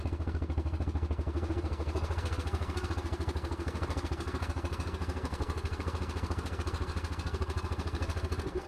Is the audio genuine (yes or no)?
no